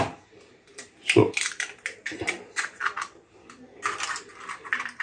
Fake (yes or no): yes